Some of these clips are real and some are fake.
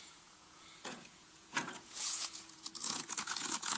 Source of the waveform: fake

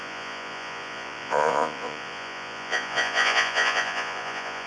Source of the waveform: fake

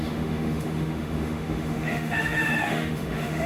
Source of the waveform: fake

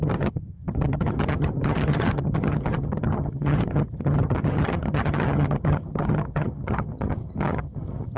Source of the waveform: fake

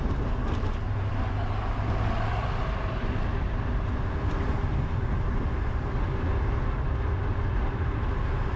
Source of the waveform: real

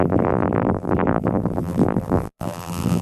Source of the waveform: fake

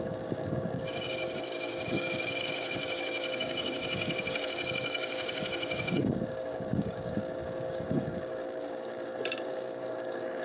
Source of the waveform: fake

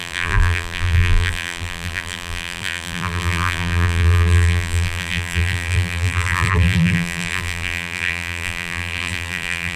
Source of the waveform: fake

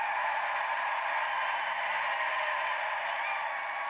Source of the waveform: real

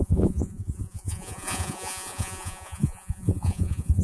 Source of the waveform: fake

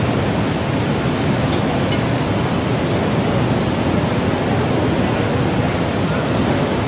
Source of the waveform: real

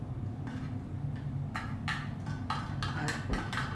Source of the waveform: real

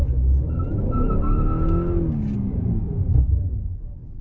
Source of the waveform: real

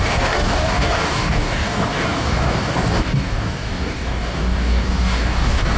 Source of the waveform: fake